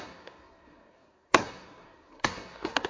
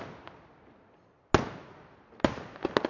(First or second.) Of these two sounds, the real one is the second